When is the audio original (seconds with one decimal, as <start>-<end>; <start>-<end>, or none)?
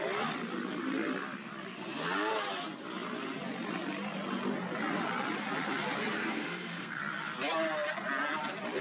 0.0-6.2; 7.0-8.8